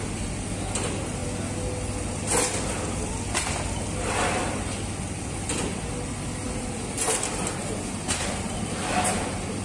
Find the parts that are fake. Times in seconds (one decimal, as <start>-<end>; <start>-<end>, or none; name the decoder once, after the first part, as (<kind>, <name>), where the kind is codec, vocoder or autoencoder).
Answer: none